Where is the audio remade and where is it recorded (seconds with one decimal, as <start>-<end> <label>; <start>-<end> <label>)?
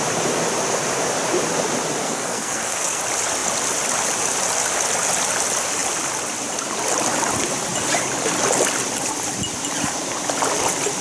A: 0.0-2.0 recorded; 2.0-3.0 remade; 3.0-11.0 recorded